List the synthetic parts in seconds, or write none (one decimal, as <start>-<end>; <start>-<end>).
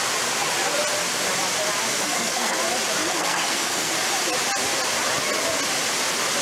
1.9-2.6; 3.0-3.9